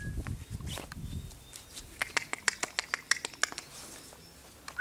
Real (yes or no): yes